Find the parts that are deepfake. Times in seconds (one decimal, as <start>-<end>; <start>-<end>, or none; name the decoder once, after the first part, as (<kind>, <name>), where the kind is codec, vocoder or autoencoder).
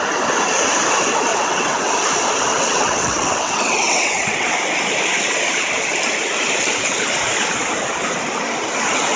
1.3-1.9 (vocoder, WaveNeXt); 2.5-4.5